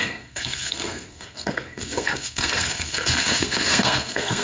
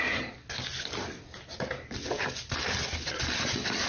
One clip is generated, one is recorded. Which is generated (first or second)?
first